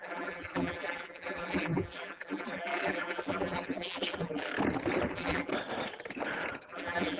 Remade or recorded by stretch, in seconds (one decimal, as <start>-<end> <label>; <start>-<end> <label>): 0.0-4.5 remade; 4.5-5.1 recorded; 5.1-5.5 remade; 5.5-6.7 recorded; 6.7-7.2 remade